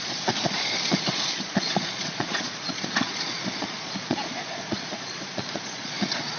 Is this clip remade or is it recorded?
remade